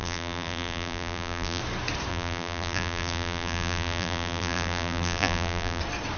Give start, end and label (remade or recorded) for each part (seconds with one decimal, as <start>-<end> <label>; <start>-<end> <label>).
0.0-1.6 remade; 1.6-2.1 recorded; 2.1-5.8 remade; 5.8-6.2 recorded